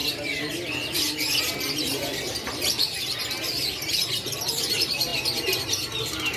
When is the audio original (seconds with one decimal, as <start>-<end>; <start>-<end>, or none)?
0.0-1.4; 5.1-6.4